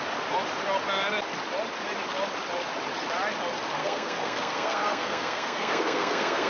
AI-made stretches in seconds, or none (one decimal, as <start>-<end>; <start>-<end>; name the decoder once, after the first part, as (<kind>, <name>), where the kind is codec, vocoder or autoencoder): 3.8-6.5 (codec, SNAC)